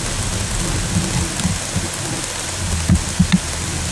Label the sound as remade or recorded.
recorded